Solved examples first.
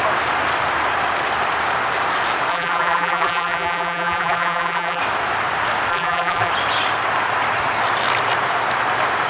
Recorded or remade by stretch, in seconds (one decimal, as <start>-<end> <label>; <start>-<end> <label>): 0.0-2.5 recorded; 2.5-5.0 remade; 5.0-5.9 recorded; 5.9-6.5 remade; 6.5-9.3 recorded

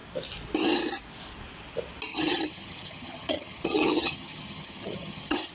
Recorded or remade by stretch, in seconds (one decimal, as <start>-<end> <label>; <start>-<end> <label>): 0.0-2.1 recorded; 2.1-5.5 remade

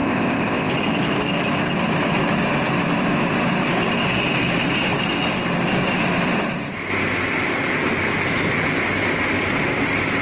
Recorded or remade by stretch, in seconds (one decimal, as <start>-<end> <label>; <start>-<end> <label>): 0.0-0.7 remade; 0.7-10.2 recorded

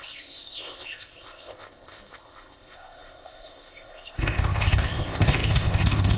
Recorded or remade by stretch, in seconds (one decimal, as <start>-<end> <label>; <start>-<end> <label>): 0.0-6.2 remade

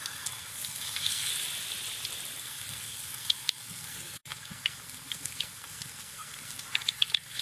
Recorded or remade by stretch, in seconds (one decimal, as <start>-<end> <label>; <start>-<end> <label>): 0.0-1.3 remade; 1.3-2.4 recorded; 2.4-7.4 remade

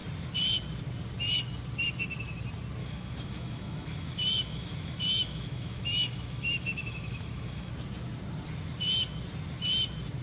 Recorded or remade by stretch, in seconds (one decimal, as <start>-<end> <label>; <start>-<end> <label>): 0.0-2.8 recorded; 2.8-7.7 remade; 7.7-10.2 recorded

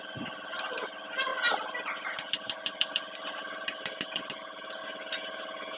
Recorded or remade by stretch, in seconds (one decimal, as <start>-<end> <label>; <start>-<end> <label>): 0.0-1.3 recorded; 1.3-4.8 remade; 4.8-5.8 recorded